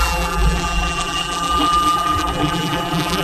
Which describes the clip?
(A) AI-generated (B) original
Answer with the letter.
A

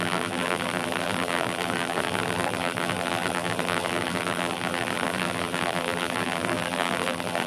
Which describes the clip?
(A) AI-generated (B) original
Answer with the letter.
A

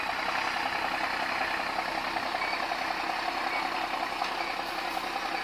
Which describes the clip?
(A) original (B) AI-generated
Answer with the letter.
A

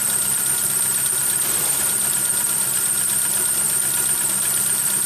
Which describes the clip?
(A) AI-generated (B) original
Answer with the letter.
B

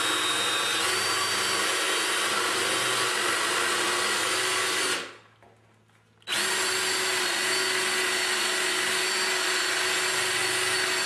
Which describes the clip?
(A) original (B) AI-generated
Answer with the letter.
A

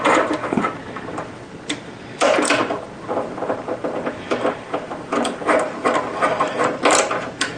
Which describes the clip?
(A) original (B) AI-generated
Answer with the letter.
B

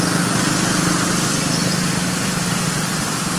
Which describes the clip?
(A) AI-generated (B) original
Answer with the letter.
B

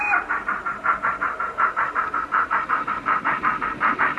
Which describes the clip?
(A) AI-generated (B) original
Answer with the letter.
A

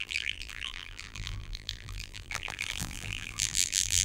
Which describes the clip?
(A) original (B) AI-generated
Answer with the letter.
B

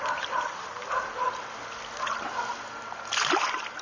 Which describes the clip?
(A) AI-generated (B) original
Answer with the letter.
A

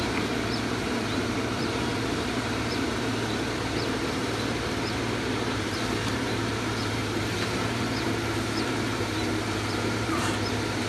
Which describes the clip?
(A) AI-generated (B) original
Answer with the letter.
A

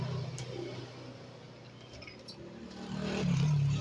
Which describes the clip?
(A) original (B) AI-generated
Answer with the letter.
A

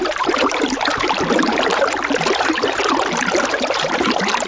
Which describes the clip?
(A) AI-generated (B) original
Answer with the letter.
A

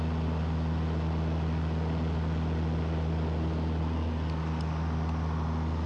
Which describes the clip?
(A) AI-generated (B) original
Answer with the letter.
B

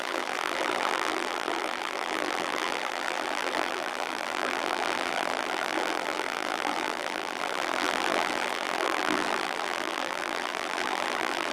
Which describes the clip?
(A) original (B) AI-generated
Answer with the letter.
B